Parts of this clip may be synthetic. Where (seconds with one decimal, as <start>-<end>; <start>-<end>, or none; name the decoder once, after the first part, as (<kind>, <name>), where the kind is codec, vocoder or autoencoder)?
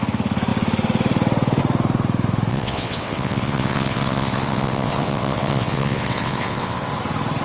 2.5-6.9 (vocoder, WaveNeXt)